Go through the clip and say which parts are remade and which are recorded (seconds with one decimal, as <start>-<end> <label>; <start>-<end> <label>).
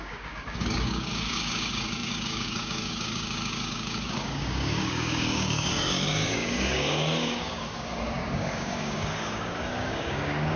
0.0-10.6 remade